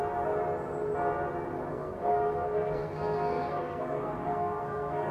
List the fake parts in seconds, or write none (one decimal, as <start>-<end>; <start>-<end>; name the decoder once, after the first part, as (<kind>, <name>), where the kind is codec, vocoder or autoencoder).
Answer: 1.7-5.1 (codec, SNAC)